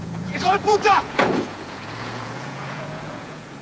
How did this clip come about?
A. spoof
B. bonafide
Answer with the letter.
A